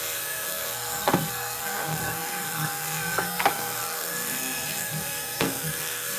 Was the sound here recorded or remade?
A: remade